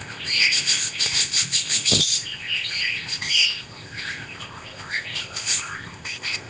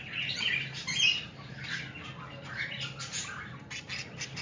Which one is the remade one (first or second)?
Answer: first